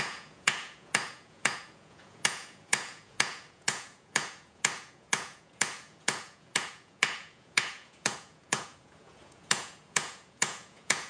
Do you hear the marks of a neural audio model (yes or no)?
yes